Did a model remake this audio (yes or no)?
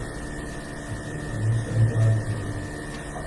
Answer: no